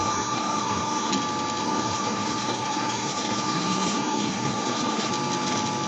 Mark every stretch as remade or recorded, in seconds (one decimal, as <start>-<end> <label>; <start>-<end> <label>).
0.0-1.1 remade; 1.1-1.6 recorded; 1.6-5.1 remade; 5.1-5.9 recorded